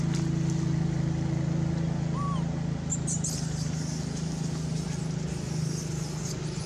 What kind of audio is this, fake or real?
real